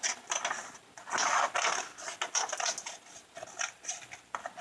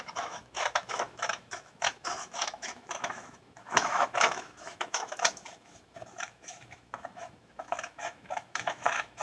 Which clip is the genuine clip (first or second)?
first